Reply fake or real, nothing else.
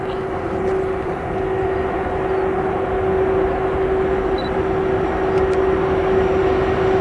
real